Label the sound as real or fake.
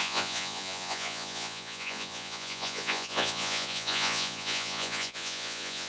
fake